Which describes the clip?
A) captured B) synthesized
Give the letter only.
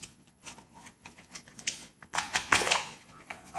B